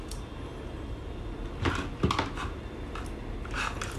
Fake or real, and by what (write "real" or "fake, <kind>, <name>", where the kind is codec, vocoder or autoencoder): real